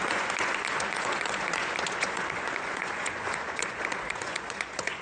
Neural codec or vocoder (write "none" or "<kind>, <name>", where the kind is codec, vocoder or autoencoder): vocoder, Vocos